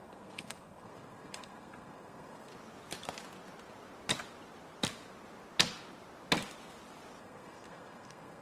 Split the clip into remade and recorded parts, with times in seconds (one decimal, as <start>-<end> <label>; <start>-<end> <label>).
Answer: 0.0-2.5 remade; 2.5-7.2 recorded; 7.2-8.4 remade